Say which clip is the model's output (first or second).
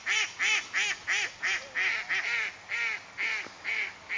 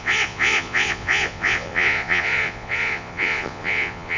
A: second